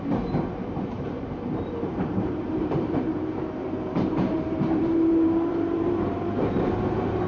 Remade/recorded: remade